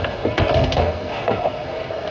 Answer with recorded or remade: remade